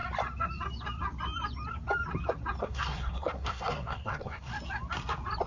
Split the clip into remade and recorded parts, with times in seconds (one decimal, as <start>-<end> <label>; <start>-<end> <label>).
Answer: 0.0-2.6 recorded; 2.6-4.5 remade; 4.5-5.5 recorded